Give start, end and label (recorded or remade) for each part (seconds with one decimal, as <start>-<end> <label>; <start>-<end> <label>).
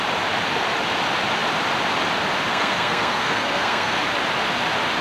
0.0-2.5 recorded; 2.5-4.0 remade; 4.0-5.0 recorded